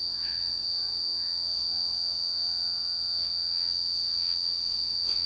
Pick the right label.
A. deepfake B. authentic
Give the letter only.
A